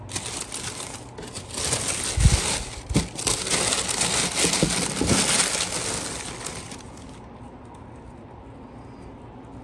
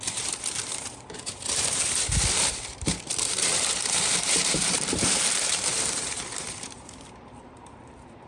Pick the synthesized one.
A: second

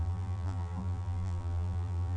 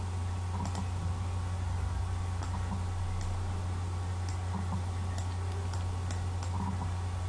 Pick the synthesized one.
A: first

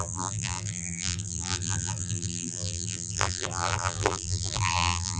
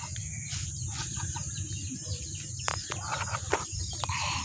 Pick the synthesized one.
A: first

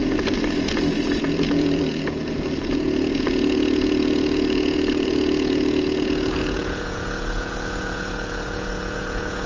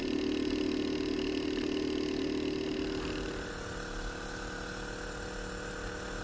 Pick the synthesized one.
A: first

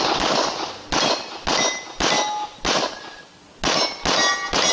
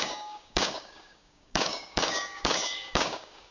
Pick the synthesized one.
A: second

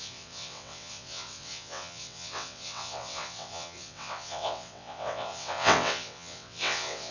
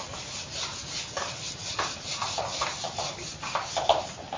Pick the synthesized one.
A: first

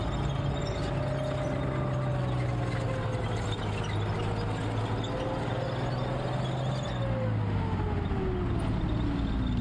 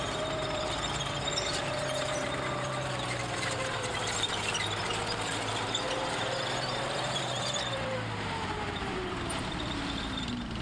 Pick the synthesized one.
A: second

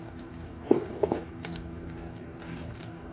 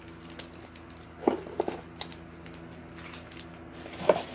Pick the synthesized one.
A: first